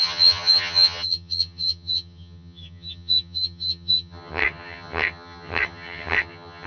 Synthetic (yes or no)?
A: yes